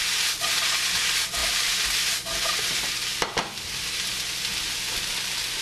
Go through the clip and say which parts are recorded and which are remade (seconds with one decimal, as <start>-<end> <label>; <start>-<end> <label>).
0.0-5.6 recorded